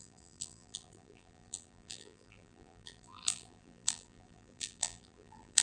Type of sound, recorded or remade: remade